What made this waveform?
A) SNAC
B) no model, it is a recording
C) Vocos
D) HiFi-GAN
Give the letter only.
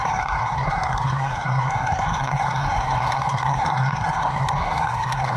A